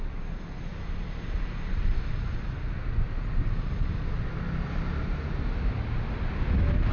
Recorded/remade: recorded